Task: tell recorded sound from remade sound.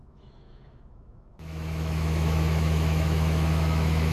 remade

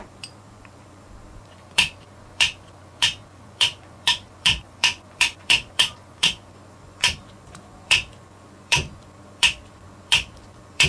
remade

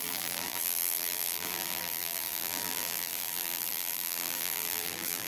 remade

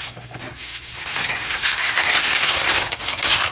remade